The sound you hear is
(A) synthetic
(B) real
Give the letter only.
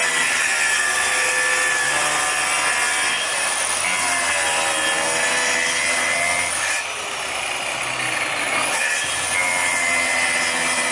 B